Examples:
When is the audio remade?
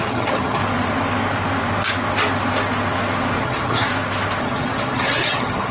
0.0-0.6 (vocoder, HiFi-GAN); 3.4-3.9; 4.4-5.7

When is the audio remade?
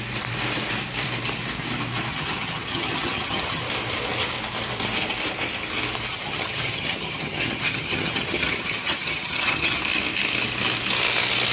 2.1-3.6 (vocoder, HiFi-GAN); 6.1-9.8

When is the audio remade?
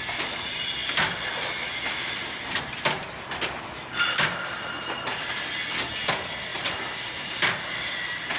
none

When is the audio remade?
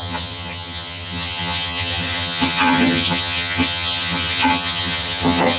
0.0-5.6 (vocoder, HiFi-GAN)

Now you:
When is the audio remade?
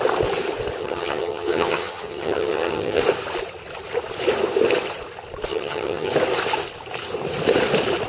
0.8-3.0 (vocoder, HiFi-GAN); 5.5-6.1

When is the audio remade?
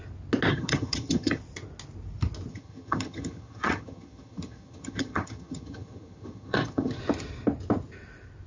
0.5-1.4 (vocoder, HiFi-GAN); 2.5-7.0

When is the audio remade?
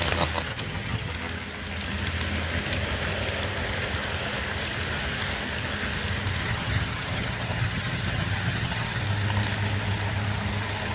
0.5-1.1 (vocoder, HiFi-GAN); 6.4-9.0